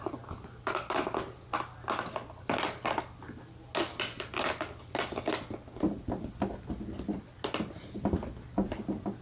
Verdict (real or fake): real